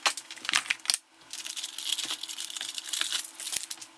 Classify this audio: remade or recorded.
recorded